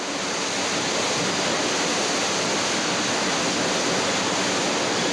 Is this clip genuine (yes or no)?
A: yes